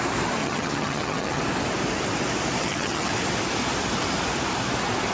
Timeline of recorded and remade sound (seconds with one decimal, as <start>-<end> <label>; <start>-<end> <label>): 0.0-0.4 recorded; 0.4-1.4 remade; 1.4-2.6 recorded; 2.6-3.1 remade; 3.1-5.1 recorded